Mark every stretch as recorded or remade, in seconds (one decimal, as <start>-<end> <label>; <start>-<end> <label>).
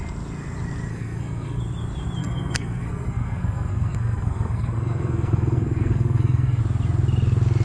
0.0-0.9 recorded; 0.9-1.6 remade; 1.6-2.2 recorded; 2.2-6.6 remade; 6.6-7.6 recorded